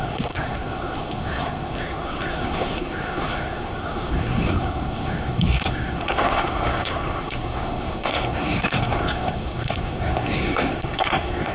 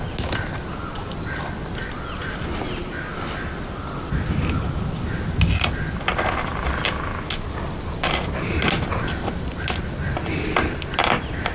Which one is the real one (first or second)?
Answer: second